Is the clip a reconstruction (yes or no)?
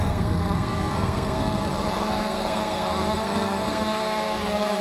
yes